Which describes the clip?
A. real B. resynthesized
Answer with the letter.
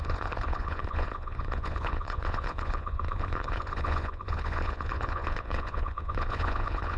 B